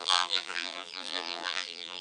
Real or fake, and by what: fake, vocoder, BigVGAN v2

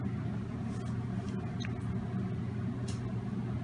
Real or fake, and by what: real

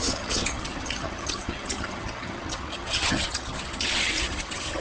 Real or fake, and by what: fake, vocoder, HiFi-GAN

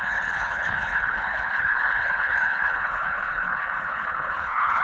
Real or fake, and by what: fake, codec, HILCodec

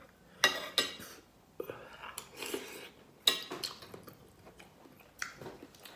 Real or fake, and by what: real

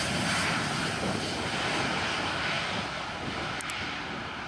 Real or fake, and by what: real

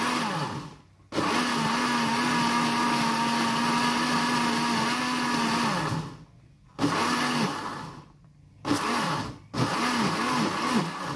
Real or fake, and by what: real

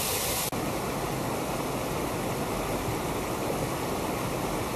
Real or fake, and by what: real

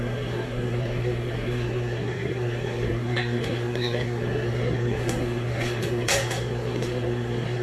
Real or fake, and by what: fake, codec, SNAC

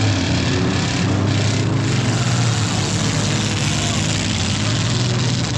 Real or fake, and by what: real